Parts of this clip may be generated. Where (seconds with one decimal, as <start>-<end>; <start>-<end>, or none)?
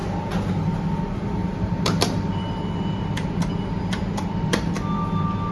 1.4-4.7